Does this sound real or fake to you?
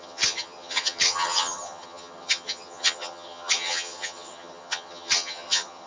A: fake